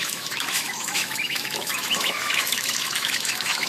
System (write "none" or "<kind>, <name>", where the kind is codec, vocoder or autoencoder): autoencoder, DAC-VAE